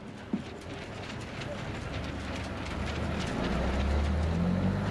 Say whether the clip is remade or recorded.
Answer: recorded